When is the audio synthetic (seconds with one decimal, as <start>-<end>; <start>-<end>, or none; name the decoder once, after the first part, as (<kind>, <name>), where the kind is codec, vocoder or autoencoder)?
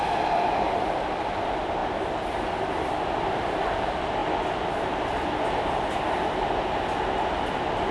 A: none